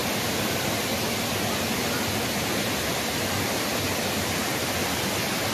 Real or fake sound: real